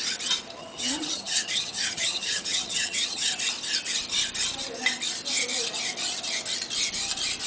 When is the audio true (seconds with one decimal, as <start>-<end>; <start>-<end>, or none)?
0.0-0.6; 3.3-7.5